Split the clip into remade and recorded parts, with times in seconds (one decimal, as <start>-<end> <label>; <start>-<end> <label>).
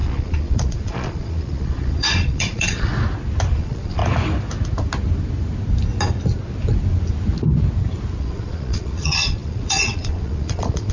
0.0-2.9 remade; 2.9-3.5 recorded; 3.5-4.0 remade; 4.0-8.2 recorded; 8.2-10.9 remade